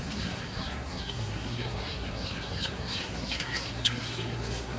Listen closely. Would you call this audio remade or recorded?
remade